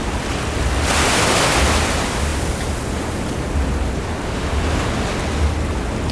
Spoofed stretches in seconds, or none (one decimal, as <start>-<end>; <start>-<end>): none